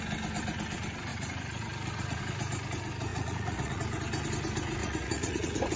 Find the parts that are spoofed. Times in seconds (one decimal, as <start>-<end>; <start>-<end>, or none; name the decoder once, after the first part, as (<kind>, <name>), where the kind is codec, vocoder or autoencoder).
1.1-2.2 (vocoder, Vocos); 3.1-3.8; 4.8-5.8